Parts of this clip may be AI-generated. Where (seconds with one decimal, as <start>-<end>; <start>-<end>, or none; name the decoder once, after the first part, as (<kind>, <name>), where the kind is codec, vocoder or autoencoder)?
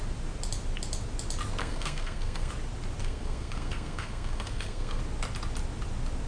1.6-2.5 (codec, SNAC); 3.0-5.0